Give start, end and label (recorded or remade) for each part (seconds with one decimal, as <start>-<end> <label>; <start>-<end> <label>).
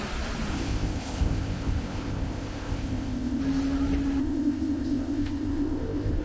0.0-0.5 recorded; 0.5-3.4 remade; 3.4-4.2 recorded; 4.2-6.2 remade